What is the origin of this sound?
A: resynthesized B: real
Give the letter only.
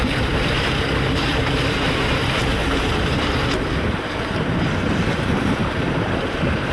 A